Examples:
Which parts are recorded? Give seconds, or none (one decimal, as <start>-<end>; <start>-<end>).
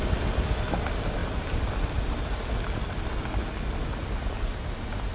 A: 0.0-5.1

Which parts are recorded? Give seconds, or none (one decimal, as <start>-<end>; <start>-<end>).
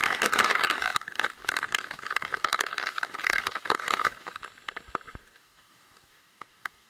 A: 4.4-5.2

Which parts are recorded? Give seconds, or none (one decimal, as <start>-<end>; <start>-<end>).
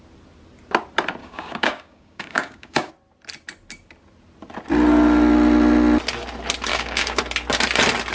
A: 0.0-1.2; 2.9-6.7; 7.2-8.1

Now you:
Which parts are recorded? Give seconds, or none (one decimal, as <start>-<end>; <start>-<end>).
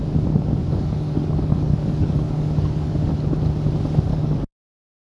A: 0.0-0.6; 3.1-4.1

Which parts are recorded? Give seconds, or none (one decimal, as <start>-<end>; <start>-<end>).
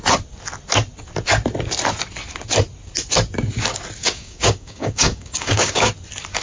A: 0.0-4.0; 5.9-6.4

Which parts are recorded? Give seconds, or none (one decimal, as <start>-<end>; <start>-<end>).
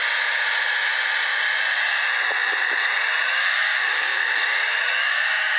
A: 0.0-3.4; 4.2-5.0